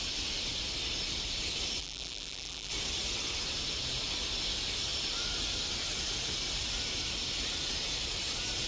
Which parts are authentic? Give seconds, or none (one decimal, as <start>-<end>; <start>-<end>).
0.0-1.8; 2.7-8.7